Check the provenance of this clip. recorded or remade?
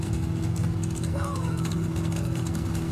remade